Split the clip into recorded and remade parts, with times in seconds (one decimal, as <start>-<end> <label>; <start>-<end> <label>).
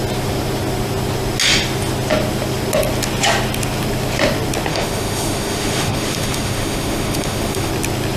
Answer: 0.0-4.7 recorded; 4.7-7.7 remade; 7.7-8.2 recorded